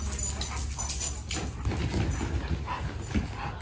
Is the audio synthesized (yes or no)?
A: no